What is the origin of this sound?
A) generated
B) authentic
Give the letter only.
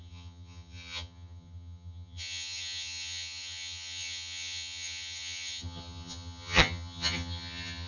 A